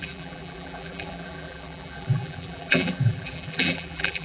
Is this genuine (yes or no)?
no